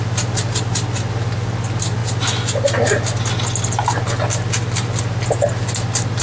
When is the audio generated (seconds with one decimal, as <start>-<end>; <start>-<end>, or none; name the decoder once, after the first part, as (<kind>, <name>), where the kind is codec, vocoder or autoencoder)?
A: none